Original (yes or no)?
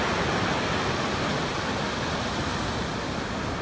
yes